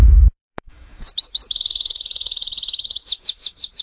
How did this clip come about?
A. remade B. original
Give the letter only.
A